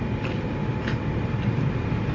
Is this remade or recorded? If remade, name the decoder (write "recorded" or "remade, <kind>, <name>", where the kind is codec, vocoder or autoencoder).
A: recorded